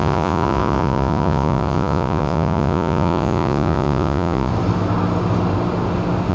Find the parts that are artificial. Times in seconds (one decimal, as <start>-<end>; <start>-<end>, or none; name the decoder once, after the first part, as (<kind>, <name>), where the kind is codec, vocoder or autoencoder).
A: 0.0-4.5 (vocoder, Vocos)

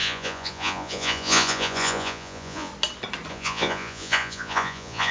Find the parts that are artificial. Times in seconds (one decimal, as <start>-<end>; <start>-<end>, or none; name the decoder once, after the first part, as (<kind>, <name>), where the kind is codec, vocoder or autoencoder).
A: 0.0-2.7 (vocoder, Vocos); 3.3-5.1